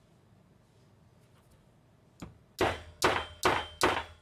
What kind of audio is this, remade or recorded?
recorded